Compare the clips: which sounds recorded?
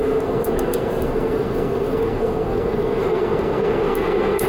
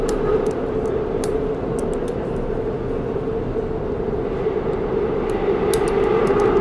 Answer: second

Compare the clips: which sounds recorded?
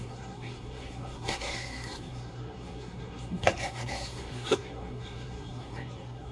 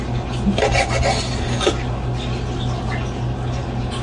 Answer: second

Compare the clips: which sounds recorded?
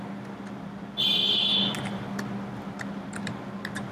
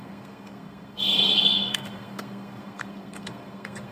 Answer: first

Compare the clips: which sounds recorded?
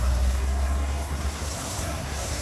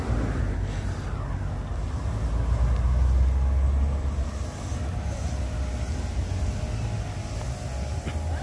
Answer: second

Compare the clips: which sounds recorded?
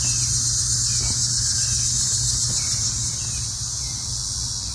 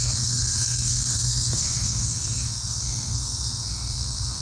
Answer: first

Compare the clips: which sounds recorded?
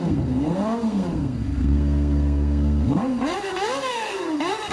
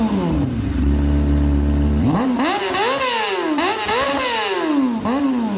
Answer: second